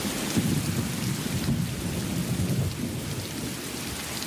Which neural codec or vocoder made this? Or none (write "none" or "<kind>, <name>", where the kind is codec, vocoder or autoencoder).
none